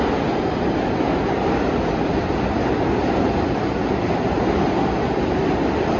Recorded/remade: recorded